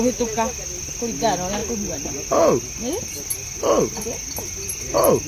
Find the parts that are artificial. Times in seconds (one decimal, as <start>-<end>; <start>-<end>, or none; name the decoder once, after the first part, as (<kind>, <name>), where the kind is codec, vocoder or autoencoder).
none